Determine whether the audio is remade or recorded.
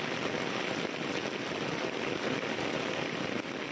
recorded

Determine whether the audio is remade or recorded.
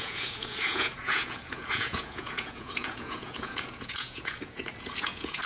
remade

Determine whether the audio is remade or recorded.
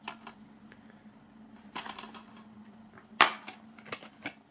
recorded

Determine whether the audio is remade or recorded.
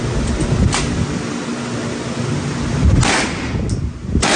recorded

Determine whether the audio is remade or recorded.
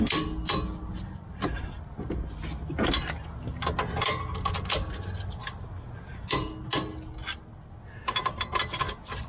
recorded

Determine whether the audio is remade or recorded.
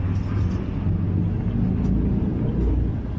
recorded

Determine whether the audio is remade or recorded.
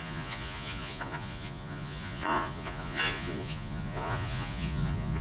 remade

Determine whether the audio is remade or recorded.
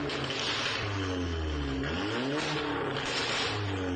recorded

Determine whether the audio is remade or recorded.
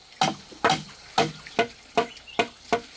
recorded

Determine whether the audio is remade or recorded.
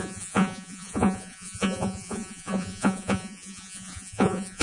remade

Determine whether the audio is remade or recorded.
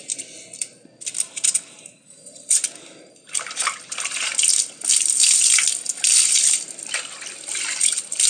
recorded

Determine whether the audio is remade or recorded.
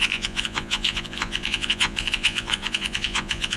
remade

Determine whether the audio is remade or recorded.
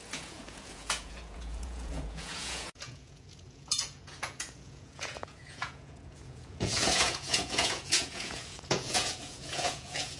remade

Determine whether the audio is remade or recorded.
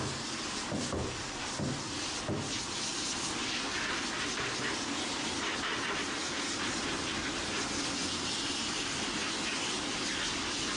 recorded